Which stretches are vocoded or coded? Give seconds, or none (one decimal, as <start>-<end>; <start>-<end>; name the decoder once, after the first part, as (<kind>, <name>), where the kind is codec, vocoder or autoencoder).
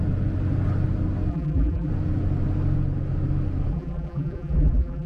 1.3-1.9 (vocoder, BigVGAN v2); 3.7-5.1